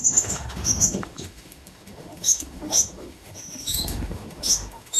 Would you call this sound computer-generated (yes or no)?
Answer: yes